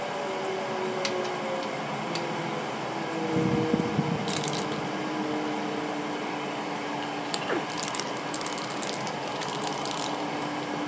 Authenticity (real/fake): real